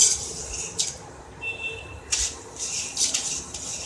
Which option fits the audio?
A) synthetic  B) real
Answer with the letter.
B